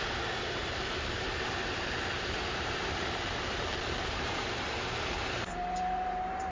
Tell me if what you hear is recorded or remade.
remade